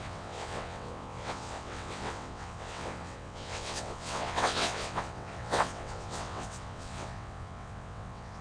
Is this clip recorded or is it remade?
remade